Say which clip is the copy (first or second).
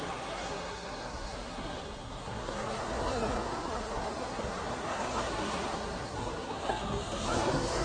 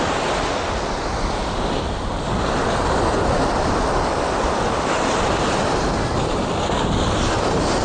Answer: first